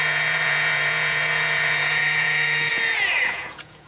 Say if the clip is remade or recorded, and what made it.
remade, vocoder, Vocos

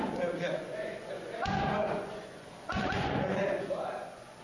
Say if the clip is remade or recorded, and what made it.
remade, vocoder, Vocos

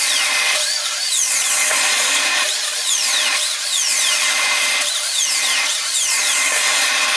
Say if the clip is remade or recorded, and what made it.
remade, vocoder, Vocos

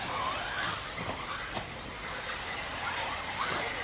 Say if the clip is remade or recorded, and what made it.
recorded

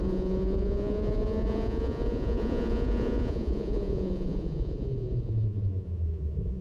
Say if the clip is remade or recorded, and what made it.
remade, vocoder, Vocos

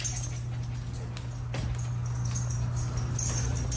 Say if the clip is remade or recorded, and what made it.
recorded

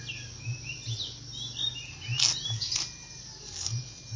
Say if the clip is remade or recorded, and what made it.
recorded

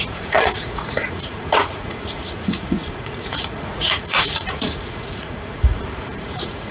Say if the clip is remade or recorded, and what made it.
remade, vocoder, Vocos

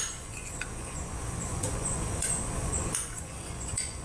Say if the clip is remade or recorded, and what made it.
remade, vocoder, Vocos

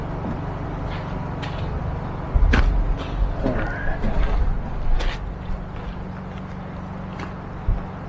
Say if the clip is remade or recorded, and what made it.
recorded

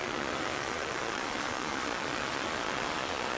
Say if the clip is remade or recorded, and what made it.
remade, vocoder, Vocos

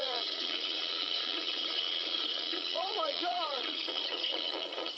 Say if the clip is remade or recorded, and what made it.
remade, vocoder, Vocos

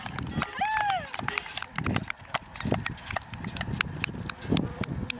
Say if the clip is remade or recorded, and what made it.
recorded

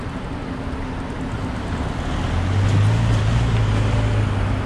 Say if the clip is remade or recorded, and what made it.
recorded